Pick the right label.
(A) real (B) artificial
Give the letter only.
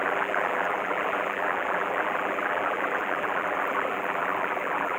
B